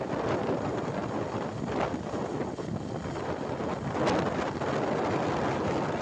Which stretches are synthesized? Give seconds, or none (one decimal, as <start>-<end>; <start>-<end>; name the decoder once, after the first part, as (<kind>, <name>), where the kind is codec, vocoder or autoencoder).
none